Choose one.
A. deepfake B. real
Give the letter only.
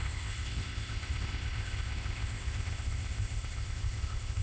A